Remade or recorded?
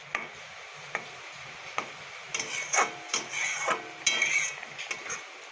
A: recorded